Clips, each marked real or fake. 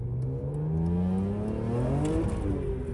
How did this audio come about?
real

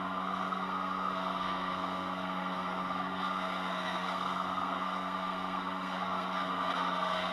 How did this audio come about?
fake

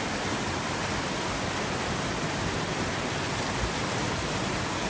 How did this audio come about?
real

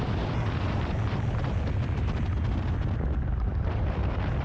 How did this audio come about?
real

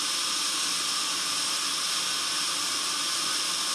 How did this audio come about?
real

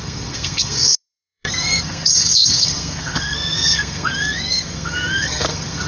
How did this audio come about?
fake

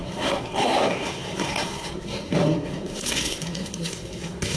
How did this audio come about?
fake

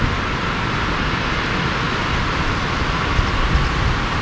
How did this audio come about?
real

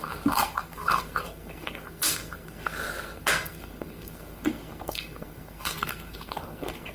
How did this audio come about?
fake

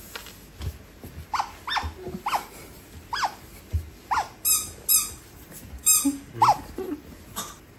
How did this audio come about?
real